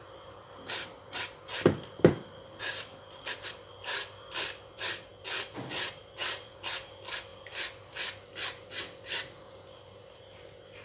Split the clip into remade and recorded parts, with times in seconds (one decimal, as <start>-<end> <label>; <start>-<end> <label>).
0.0-10.8 recorded